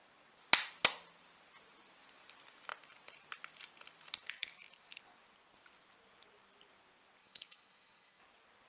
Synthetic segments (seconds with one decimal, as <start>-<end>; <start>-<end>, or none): 7.2-8.2